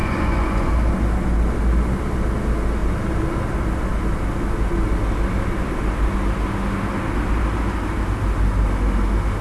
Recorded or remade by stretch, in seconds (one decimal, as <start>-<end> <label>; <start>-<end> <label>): 0.0-0.7 remade; 0.7-9.4 recorded